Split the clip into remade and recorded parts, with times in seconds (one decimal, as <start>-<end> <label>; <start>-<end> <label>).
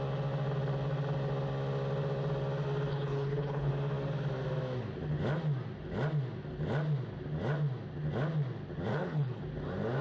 0.0-2.9 recorded; 2.9-3.7 remade; 3.7-8.9 recorded; 8.9-9.4 remade; 9.4-10.0 recorded